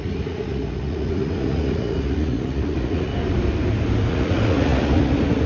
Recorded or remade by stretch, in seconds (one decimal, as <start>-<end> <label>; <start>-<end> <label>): 0.0-3.1 remade; 3.1-4.1 recorded; 4.1-5.5 remade